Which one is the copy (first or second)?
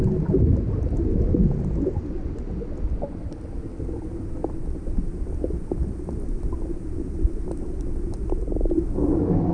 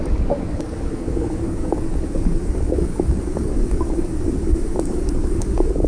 second